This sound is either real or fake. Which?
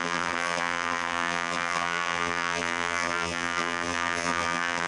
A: fake